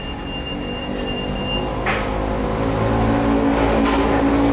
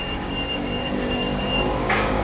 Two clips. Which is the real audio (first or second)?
first